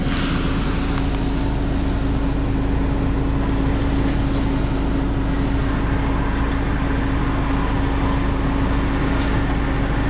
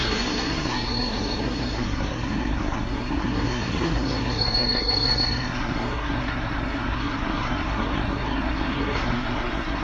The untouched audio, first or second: first